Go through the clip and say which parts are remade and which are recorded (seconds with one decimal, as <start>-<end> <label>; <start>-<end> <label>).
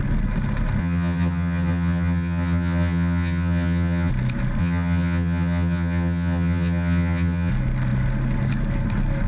0.0-0.8 recorded; 0.8-4.1 remade; 4.1-4.6 recorded; 4.6-7.5 remade; 7.5-9.3 recorded